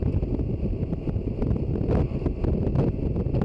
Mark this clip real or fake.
real